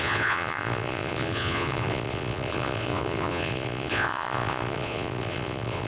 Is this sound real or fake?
fake